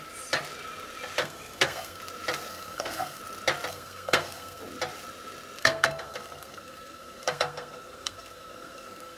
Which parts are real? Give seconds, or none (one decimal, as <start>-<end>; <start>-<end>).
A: 0.0-1.2; 2.0-2.5; 3.2-3.7; 4.6-5.6